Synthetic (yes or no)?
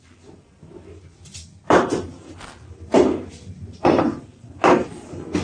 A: no